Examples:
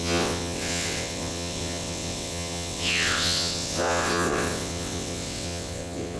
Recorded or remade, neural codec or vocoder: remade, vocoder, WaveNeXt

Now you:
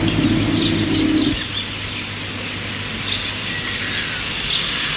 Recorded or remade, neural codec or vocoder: recorded